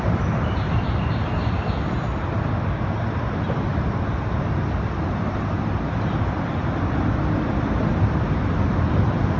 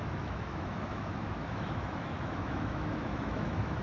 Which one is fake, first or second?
second